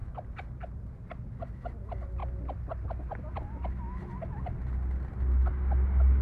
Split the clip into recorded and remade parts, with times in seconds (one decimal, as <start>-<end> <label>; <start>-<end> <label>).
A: 0.0-1.1 remade; 1.1-6.2 recorded